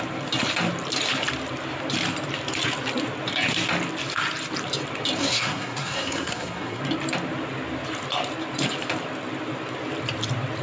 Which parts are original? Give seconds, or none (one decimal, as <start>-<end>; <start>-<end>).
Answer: 0.0-5.2; 6.8-10.6